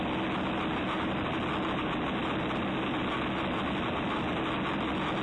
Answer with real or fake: real